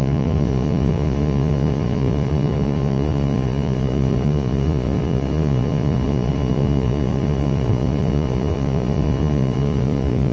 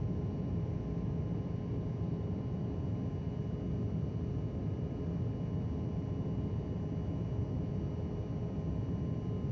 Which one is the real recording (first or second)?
second